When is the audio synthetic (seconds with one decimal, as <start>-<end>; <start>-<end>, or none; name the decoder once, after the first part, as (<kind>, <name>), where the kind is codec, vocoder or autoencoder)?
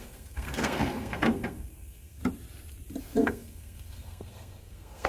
0.0-2.2 (codec, SNAC); 3.0-5.1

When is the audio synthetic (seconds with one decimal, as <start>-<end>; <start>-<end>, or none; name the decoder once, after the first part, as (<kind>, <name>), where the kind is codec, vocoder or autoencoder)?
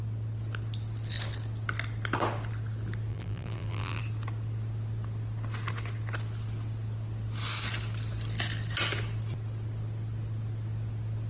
3.1-4.0 (vocoder, BigVGAN v2)